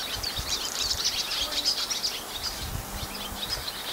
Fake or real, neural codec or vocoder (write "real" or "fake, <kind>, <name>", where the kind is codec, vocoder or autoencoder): real